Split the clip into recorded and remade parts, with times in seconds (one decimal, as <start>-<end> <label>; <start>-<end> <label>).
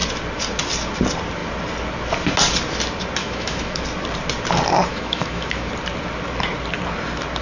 0.0-3.2 recorded; 3.2-3.8 remade; 3.8-4.9 recorded; 4.9-5.7 remade; 5.7-7.4 recorded